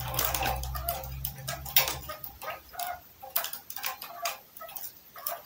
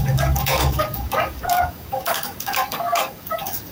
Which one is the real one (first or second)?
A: first